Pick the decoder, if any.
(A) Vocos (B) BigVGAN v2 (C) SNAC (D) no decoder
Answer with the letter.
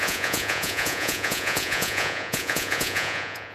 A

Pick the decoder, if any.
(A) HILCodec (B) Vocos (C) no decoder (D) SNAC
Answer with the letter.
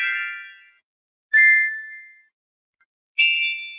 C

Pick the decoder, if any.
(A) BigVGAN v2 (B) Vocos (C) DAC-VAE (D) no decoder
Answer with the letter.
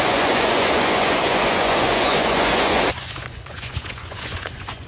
B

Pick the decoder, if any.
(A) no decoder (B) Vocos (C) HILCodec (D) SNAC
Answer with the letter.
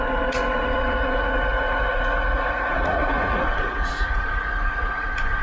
B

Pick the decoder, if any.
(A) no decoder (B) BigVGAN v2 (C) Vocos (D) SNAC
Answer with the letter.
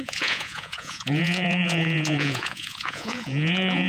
C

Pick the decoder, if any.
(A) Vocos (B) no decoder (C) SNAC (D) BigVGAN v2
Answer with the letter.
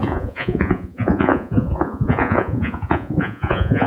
A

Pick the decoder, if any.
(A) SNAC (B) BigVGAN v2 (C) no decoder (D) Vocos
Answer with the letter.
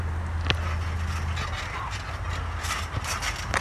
C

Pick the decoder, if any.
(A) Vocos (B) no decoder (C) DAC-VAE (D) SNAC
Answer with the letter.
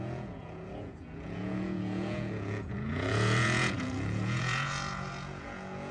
A